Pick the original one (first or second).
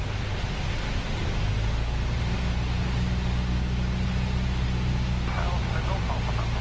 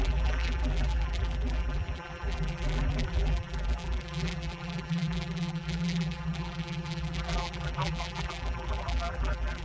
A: first